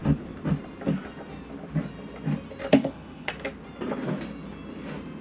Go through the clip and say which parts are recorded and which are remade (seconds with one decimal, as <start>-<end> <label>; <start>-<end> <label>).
0.0-2.7 recorded; 2.7-3.3 remade; 3.3-5.2 recorded